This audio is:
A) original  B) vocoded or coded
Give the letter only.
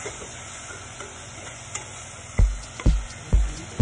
B